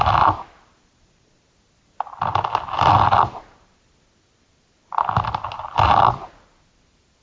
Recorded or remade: recorded